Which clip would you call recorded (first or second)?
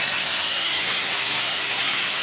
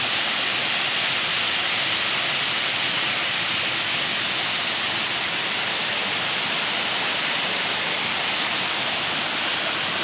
second